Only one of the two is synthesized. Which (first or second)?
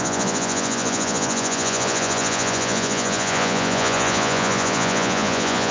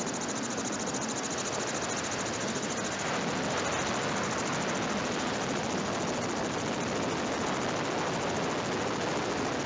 first